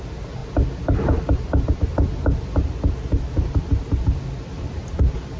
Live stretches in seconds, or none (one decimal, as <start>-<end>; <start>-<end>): 0.0-5.4